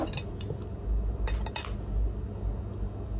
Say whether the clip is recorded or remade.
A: recorded